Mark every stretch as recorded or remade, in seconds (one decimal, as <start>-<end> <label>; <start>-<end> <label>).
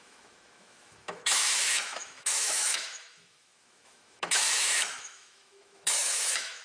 0.0-6.6 remade